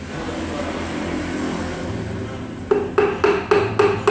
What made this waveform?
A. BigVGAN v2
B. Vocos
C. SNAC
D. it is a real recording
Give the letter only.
D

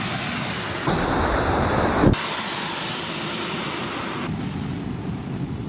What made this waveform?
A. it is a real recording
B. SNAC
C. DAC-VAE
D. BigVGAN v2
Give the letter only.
A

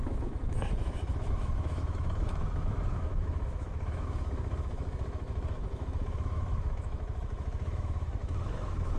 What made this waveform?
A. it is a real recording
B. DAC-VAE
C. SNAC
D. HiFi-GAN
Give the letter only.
B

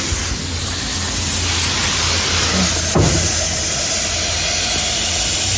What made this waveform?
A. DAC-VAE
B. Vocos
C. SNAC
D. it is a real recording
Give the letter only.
D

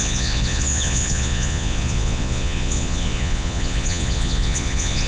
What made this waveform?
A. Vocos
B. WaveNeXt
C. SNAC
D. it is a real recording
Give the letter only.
A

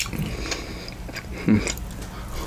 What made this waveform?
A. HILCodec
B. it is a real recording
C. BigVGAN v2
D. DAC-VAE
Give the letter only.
B